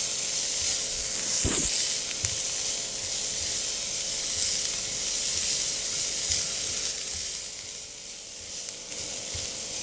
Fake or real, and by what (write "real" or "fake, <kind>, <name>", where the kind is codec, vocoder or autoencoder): real